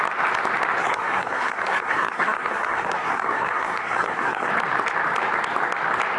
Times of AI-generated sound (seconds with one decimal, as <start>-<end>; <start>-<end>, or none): 0.8-4.5